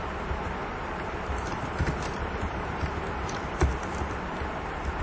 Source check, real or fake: fake